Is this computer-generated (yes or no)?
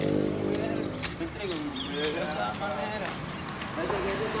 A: no